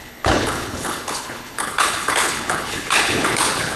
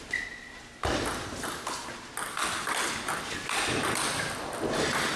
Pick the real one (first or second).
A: second